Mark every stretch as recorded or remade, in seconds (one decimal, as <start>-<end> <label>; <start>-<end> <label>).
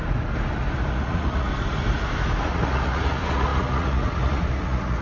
0.0-0.9 recorded; 0.9-1.5 remade; 1.5-2.4 recorded; 2.4-5.0 remade